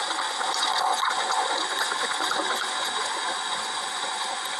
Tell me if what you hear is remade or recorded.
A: remade